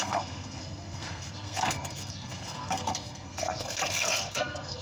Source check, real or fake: fake